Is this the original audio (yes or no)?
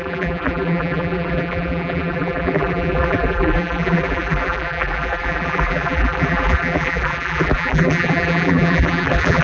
no